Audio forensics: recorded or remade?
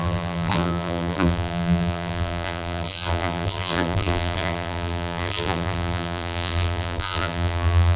remade